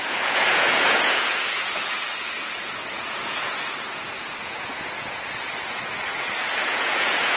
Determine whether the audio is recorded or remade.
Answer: remade